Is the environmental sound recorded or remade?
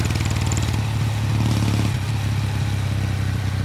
recorded